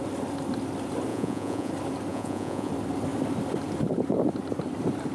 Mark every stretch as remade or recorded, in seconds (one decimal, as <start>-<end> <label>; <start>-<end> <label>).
0.0-1.1 recorded; 1.1-1.7 remade; 1.7-2.1 recorded; 2.1-2.7 remade; 2.7-5.1 recorded